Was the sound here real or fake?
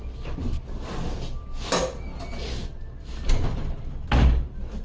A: real